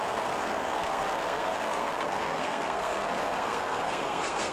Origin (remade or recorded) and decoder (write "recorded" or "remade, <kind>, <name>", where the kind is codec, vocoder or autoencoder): remade, codec, SNAC